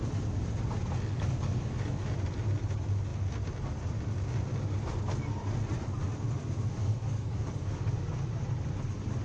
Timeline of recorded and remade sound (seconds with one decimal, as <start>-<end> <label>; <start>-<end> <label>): 0.0-1.1 recorded; 1.1-2.0 remade; 2.0-6.8 recorded; 6.8-7.8 remade; 7.8-9.2 recorded